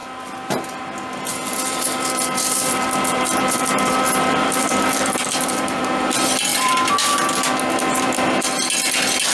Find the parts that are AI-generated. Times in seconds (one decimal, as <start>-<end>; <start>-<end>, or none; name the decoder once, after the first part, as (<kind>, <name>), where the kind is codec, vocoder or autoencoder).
1.3-5.8 (vocoder, BigVGAN v2); 6.5-7.4